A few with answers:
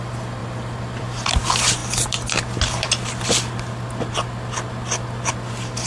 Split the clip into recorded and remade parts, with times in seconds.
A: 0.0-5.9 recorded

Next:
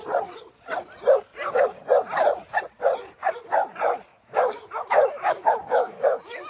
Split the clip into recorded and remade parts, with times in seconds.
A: 0.0-4.1 recorded; 4.1-6.5 remade

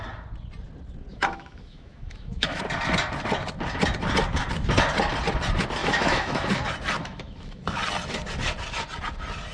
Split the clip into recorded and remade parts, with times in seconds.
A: 0.0-1.1 recorded; 1.1-2.6 remade; 2.6-5.8 recorded; 5.8-6.5 remade; 6.5-7.0 recorded; 7.0-7.6 remade; 7.6-9.5 recorded

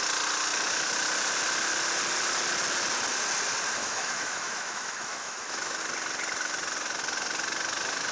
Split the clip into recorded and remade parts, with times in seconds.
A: 0.0-3.8 recorded; 3.8-5.8 remade; 5.8-8.1 recorded